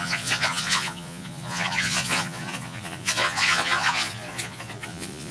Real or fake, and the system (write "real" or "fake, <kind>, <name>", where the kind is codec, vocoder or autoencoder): fake, vocoder, Vocos